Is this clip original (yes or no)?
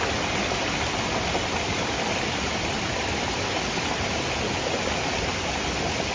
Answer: yes